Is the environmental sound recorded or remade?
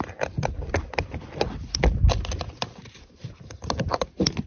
recorded